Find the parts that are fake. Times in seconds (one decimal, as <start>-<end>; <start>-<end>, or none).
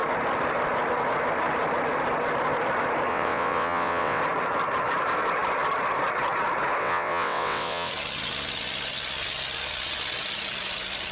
3.1-4.2; 6.8-7.9